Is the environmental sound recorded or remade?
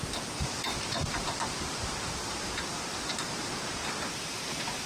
recorded